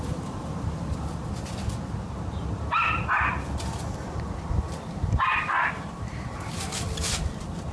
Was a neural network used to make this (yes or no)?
yes